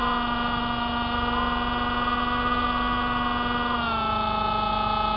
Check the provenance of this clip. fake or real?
real